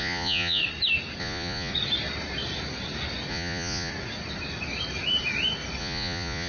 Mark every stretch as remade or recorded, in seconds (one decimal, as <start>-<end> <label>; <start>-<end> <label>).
0.0-0.6 remade; 0.6-1.2 recorded; 1.2-1.7 remade; 1.7-3.3 recorded; 3.3-3.9 remade; 3.9-5.8 recorded; 5.8-6.5 remade